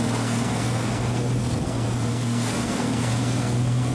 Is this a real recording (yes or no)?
no